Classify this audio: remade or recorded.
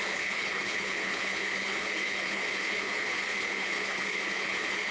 remade